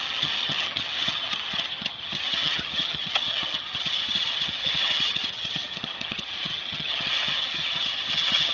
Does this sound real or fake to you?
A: fake